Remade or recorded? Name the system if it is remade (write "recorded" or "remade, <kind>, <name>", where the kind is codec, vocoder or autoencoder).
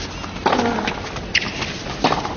recorded